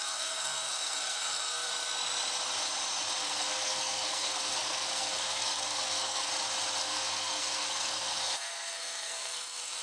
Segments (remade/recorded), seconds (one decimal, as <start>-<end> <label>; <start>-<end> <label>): 0.0-1.7 remade; 1.7-3.2 recorded; 3.2-6.3 remade; 6.3-6.8 recorded; 6.8-9.8 remade